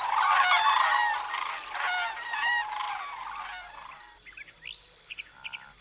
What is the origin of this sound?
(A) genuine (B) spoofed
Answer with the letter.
A